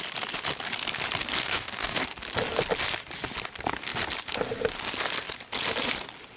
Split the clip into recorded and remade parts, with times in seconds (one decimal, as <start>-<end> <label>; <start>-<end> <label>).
0.0-1.4 recorded; 1.4-2.0 remade; 2.0-6.4 recorded

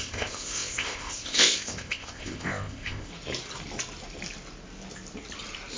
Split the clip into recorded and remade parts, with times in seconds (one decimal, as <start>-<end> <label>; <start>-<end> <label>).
0.0-3.1 remade; 3.1-5.8 recorded

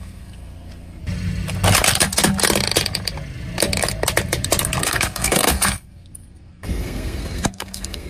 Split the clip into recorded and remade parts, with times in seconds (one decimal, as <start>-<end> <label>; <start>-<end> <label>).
0.0-1.0 remade; 1.0-4.8 recorded; 4.8-8.1 remade

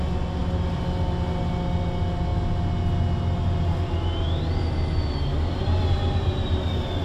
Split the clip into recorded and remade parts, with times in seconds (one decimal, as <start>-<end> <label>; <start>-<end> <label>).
0.0-7.0 recorded

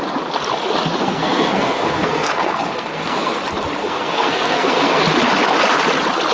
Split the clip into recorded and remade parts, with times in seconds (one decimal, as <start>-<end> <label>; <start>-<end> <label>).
0.0-1.0 recorded; 1.0-3.4 remade; 3.4-3.8 recorded; 3.8-5.0 remade; 5.0-6.3 recorded

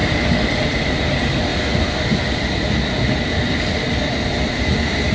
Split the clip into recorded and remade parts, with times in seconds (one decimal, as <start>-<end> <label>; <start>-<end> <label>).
0.0-5.1 recorded

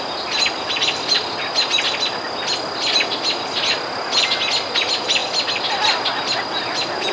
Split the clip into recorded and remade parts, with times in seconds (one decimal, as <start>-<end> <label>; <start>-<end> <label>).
0.0-7.1 recorded

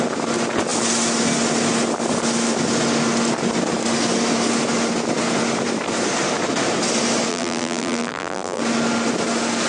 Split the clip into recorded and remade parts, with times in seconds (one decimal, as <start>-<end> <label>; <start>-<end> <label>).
0.0-7.3 recorded; 7.3-8.6 remade; 8.6-9.7 recorded